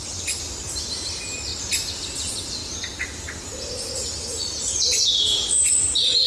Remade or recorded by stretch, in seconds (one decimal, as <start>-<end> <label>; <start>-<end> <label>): 0.0-6.3 recorded